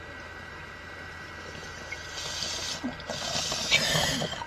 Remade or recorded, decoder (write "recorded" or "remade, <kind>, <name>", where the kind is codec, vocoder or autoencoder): recorded